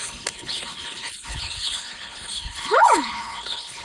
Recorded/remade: remade